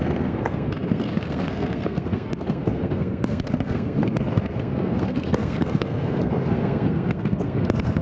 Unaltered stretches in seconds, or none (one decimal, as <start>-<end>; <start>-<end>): none